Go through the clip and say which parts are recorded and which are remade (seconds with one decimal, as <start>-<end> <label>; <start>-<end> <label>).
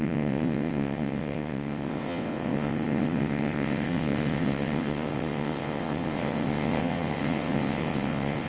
0.0-8.5 remade